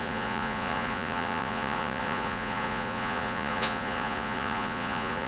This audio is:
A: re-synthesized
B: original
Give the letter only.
A